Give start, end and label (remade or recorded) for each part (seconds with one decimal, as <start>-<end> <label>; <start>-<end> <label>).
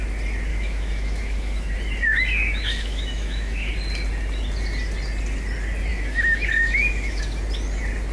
0.0-0.5 recorded; 0.5-1.7 remade; 1.7-2.1 recorded; 2.1-3.7 remade; 3.7-5.9 recorded; 5.9-7.2 remade; 7.2-8.1 recorded